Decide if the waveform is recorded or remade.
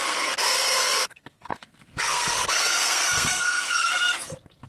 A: remade